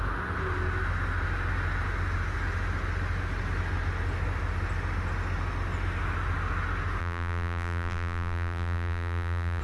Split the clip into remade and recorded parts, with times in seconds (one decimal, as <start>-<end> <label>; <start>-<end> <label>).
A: 0.0-7.0 recorded; 7.0-9.6 remade